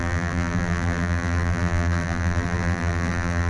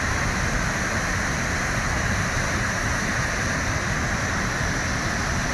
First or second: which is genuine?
second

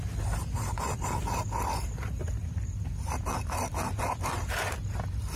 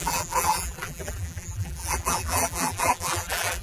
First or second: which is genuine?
first